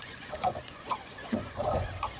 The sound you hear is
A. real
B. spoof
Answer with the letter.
B